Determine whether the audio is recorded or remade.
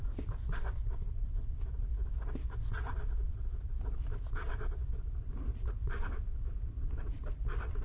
remade